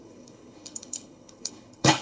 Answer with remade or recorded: remade